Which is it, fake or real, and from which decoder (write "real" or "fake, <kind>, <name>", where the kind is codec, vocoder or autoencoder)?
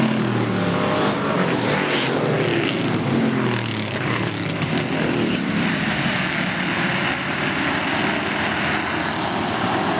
real